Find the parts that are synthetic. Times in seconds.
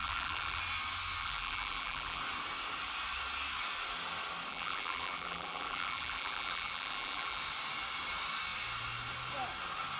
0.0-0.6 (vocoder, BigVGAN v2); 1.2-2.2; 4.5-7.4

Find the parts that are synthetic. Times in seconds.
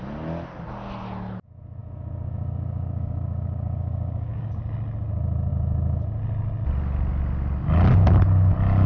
1.8-4.5 (codec, DAC)